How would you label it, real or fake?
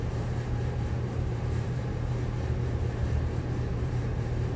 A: fake